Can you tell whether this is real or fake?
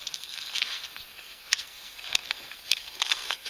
fake